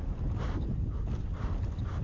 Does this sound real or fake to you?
real